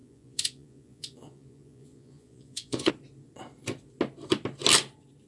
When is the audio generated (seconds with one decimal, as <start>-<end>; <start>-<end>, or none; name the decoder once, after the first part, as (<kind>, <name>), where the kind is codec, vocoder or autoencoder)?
0.0-2.9 (vocoder, Vocos)